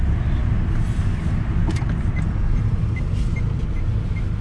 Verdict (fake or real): real